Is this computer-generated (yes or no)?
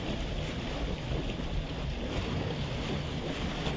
no